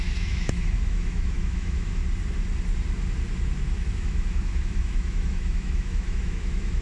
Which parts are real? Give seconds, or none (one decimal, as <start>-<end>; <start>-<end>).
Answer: 2.0-3.9

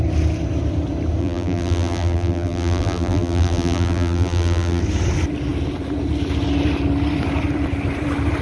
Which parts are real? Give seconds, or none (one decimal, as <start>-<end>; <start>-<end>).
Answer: 0.0-1.2; 4.8-8.4

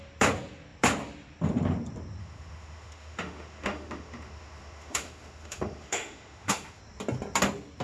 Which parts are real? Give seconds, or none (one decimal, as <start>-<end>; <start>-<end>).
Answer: 0.0-2.2; 6.8-7.8